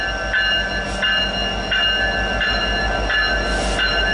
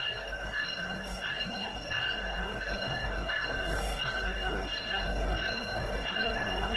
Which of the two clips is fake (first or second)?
second